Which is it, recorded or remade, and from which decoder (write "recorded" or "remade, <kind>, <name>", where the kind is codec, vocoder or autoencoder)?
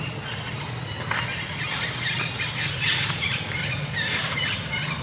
recorded